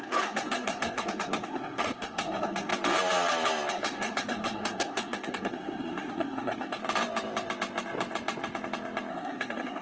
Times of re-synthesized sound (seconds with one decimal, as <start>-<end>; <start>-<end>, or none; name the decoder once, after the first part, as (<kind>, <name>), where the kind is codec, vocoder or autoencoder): 0.0-2.7 (codec, SNAC); 3.7-6.8; 9.1-9.8